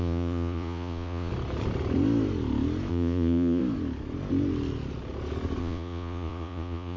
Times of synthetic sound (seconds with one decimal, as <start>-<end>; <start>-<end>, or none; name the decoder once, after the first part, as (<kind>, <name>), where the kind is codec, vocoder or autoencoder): 0.0-1.3 (vocoder, Vocos); 2.9-3.6; 5.6-7.0